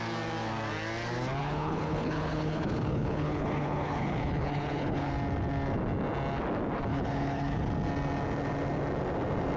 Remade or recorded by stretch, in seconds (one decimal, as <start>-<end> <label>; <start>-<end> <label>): 0.0-1.4 recorded; 1.4-5.1 remade; 5.1-6.9 recorded; 6.9-7.7 remade; 7.7-9.6 recorded